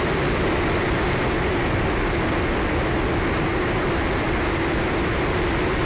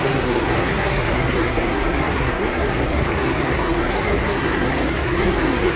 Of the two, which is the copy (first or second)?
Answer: second